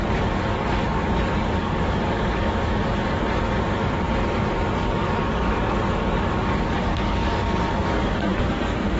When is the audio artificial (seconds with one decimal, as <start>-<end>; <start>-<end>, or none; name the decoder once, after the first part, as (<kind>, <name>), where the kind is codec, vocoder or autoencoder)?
0.5-2.5 (codec, DAC); 4.8-9.0